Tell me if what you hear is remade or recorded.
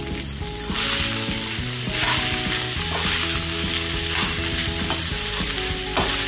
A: recorded